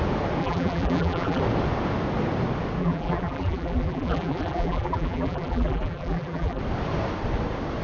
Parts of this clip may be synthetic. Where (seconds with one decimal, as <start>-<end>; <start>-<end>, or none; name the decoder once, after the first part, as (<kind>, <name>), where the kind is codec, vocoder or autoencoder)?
0.4-1.4 (vocoder, BigVGAN v2); 2.8-6.6